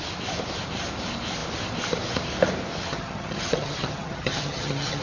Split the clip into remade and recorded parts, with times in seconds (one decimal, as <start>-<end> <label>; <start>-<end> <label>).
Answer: 0.0-2.9 recorded; 2.9-5.0 remade